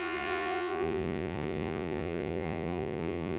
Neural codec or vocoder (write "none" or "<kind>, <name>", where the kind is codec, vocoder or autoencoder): vocoder, Vocos